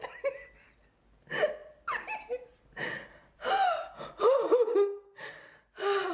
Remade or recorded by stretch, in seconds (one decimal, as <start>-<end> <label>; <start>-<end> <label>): 0.0-1.6 recorded; 1.6-5.3 remade; 5.3-6.1 recorded